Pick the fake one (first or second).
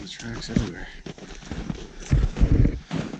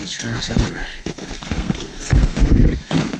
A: second